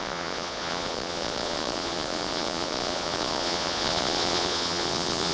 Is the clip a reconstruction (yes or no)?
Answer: yes